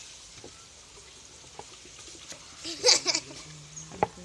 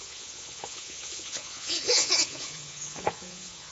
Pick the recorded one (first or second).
first